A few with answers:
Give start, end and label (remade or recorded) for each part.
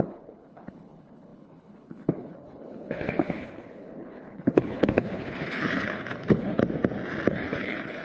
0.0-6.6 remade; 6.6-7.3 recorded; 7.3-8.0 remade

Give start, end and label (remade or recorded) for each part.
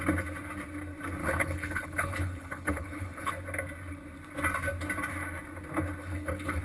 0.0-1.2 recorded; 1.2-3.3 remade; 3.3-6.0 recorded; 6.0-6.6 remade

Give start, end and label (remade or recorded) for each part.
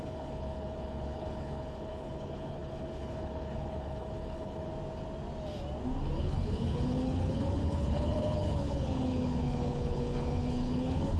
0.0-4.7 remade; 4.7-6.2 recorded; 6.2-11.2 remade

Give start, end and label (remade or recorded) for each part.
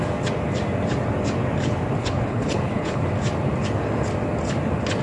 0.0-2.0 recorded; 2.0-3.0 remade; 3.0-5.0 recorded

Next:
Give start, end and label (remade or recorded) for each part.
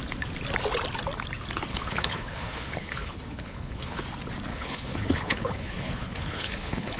0.0-1.7 recorded; 1.7-4.0 remade; 4.0-4.5 recorded; 4.5-7.0 remade